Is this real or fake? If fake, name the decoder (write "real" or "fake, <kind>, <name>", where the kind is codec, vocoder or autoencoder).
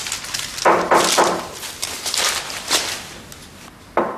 real